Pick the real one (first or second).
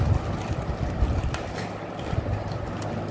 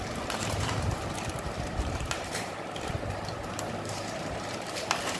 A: first